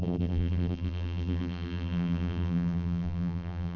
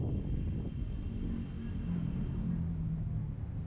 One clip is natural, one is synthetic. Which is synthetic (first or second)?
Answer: first